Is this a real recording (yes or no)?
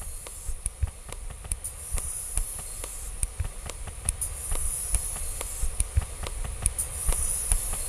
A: yes